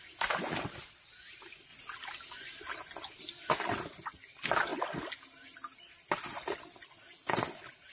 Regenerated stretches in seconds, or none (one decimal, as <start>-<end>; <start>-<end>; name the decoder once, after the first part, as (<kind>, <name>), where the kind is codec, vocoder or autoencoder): none